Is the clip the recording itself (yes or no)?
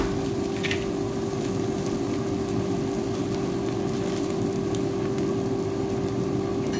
yes